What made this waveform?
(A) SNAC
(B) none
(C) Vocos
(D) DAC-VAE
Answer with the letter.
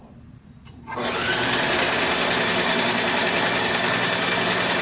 B